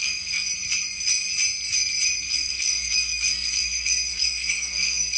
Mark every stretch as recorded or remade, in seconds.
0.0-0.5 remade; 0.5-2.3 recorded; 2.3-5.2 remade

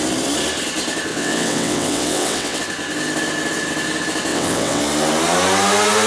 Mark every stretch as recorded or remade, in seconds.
0.0-1.1 recorded; 1.1-2.6 remade; 2.6-4.3 recorded; 4.3-4.8 remade; 4.8-6.1 recorded

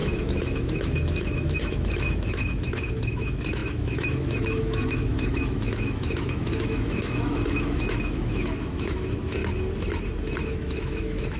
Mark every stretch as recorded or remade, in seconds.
0.0-9.4 remade; 9.4-10.4 recorded; 10.4-11.4 remade

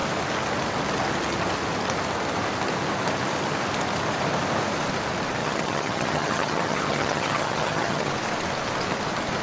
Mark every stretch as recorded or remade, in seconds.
0.0-5.4 recorded; 5.4-8.1 remade; 8.1-9.4 recorded